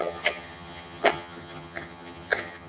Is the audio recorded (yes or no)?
no